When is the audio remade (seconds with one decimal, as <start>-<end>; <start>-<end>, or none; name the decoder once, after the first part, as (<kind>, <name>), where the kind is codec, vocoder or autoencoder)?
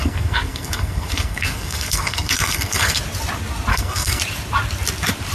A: 0.0-3.0 (codec, SNAC); 3.7-4.2